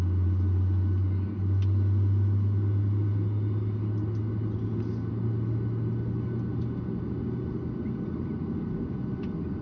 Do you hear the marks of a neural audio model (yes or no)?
no